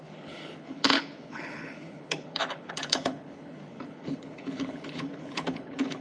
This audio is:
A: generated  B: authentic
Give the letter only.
A